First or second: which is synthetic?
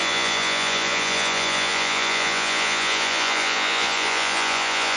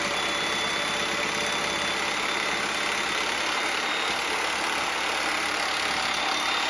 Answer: first